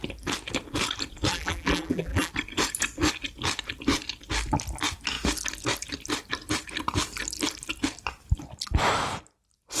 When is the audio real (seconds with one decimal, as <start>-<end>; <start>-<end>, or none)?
0.0-1.3; 2.3-9.8